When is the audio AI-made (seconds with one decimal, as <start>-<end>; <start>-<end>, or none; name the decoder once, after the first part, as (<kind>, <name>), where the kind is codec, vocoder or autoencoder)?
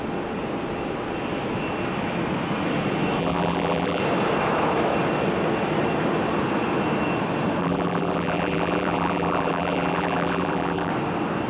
3.2-4.0 (vocoder, BigVGAN v2); 7.6-10.9